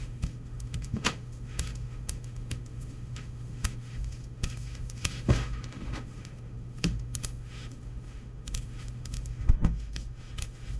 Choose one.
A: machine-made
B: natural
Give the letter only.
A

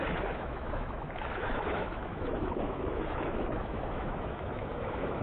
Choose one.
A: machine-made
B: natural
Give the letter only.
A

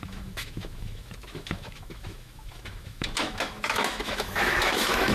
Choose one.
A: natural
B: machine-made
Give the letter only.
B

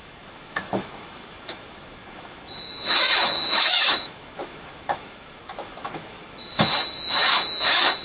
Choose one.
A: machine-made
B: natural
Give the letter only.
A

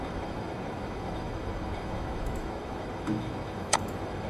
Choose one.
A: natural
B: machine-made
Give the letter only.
B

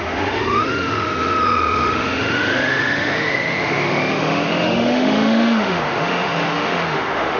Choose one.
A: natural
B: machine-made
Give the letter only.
B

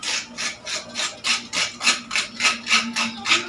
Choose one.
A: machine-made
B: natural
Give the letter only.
B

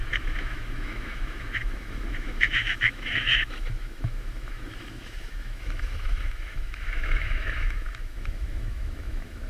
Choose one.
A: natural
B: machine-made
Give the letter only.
B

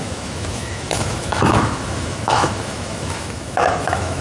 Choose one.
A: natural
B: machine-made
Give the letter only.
B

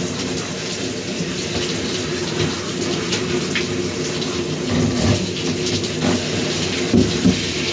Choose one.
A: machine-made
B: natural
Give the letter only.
B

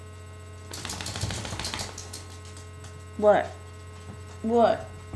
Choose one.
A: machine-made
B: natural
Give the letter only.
B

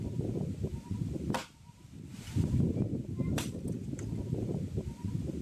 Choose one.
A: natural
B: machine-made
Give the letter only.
A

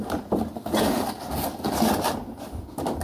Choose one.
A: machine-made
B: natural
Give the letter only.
B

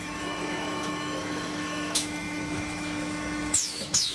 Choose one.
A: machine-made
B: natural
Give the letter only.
A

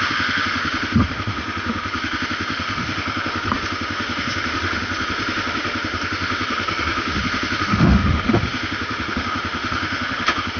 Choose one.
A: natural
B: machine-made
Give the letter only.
B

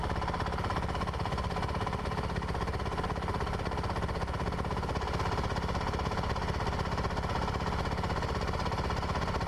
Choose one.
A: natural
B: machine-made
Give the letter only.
A